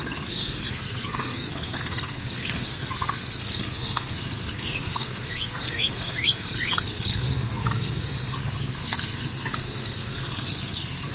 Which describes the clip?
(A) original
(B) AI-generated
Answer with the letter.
B